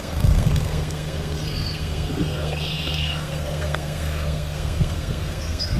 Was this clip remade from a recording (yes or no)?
yes